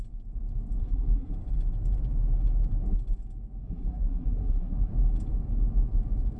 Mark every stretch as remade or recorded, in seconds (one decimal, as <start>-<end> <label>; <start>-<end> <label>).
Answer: 0.0-0.8 recorded; 0.8-1.3 remade; 1.3-3.6 recorded; 3.6-4.9 remade; 4.9-6.4 recorded